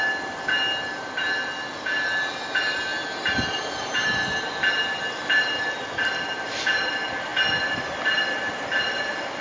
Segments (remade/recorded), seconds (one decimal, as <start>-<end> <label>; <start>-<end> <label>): 0.0-9.4 recorded